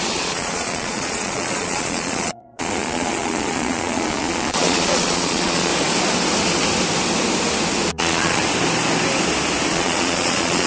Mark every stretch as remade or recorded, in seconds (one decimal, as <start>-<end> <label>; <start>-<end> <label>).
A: 0.0-5.7 remade; 5.7-7.9 recorded; 7.9-8.4 remade; 8.4-9.7 recorded; 9.7-10.7 remade

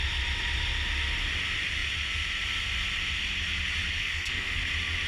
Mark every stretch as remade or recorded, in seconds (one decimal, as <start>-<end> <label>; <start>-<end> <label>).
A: 0.0-4.0 recorded; 4.0-4.6 remade; 4.6-5.1 recorded

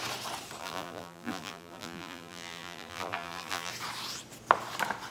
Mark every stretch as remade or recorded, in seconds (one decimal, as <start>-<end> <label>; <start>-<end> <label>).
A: 0.0-0.6 recorded; 0.6-3.7 remade; 3.7-5.1 recorded

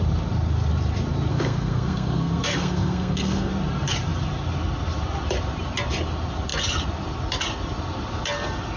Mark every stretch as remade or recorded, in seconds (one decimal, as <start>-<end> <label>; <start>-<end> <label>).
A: 0.0-1.3 recorded; 1.3-3.5 remade; 3.5-8.8 recorded